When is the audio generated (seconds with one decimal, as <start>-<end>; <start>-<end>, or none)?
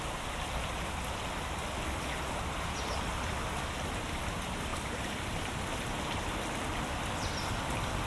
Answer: 4.7-5.6